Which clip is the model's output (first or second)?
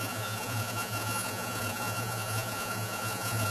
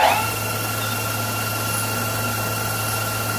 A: first